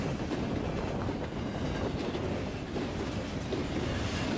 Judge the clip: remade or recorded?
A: recorded